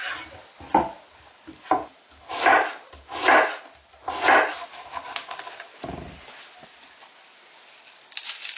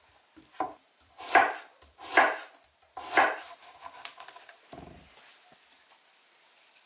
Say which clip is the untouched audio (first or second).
first